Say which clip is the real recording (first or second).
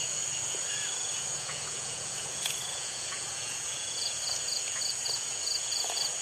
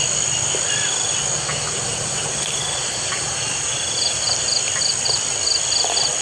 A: second